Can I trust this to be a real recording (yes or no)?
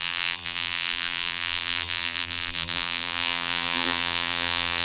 no